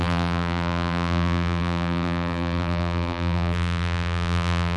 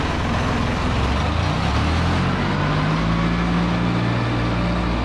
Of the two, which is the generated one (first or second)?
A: first